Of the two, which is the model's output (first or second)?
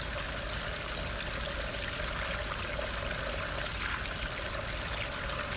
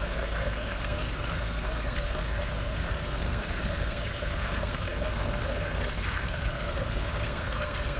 second